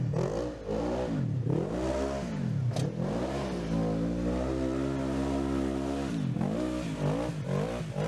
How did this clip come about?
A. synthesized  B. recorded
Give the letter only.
B